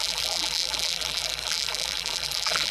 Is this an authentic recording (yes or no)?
no